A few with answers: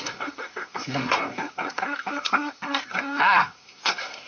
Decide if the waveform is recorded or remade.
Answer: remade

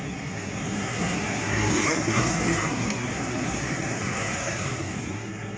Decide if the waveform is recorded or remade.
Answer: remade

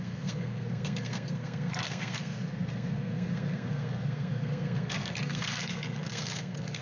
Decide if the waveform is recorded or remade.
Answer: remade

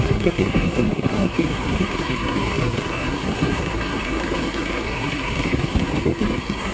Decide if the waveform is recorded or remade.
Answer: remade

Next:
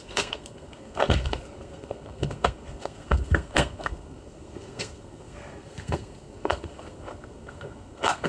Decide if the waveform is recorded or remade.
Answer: remade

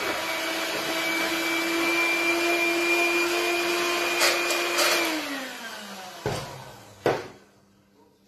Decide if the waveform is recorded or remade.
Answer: recorded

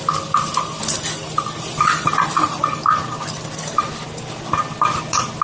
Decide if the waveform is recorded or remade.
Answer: recorded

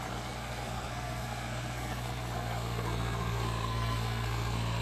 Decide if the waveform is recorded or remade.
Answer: remade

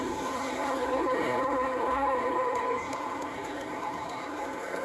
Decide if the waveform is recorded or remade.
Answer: remade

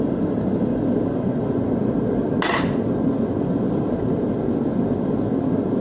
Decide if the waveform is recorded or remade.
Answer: recorded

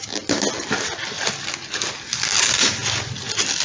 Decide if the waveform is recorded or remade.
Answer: recorded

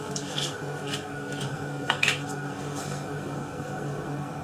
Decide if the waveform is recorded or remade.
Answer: remade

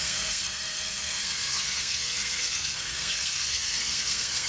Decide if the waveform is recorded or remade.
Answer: remade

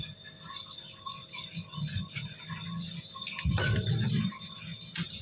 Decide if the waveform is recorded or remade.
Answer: recorded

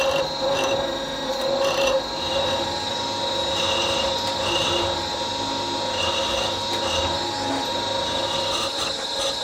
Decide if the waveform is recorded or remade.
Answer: recorded